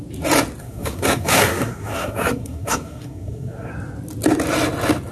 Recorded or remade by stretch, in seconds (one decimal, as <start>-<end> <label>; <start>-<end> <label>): 0.0-0.6 recorded; 0.6-3.7 remade; 3.7-5.1 recorded